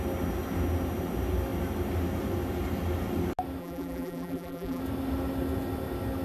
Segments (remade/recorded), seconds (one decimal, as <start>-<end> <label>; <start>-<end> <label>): 0.0-3.6 recorded; 3.6-4.8 remade; 4.8-6.2 recorded